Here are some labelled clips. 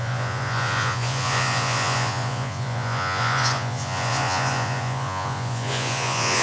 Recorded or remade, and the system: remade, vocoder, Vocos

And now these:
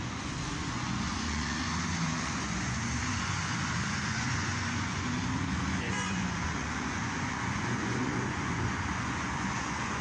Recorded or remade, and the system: remade, vocoder, Vocos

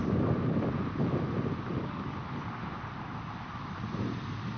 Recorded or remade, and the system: recorded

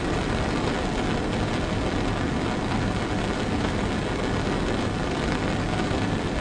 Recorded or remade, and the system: recorded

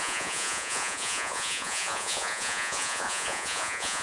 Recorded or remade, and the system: remade, vocoder, Vocos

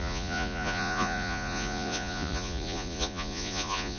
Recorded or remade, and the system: remade, vocoder, Vocos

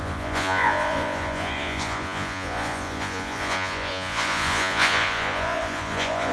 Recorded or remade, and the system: remade, vocoder, Vocos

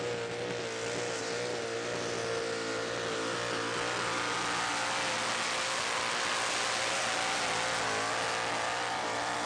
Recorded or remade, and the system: recorded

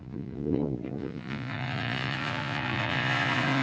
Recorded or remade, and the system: remade, vocoder, Vocos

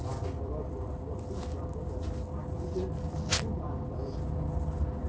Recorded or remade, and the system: recorded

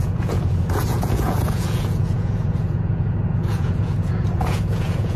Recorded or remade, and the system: remade, vocoder, Vocos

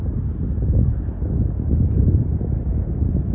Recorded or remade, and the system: recorded